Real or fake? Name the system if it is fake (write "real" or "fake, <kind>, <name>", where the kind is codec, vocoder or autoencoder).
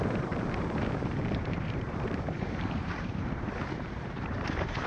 fake, vocoder, BigVGAN v2